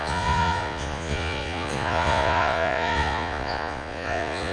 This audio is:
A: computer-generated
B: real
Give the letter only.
A